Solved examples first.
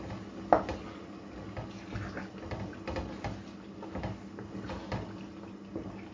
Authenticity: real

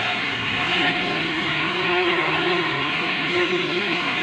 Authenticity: fake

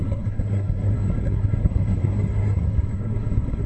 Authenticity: fake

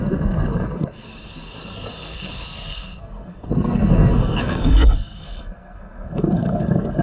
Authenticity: fake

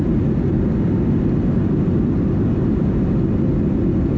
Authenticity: real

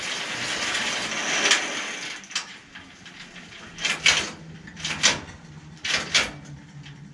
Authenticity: real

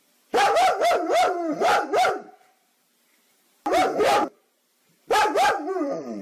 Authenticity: fake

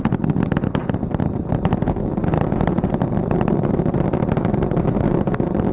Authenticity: real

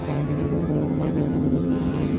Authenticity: fake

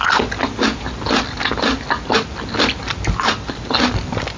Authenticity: real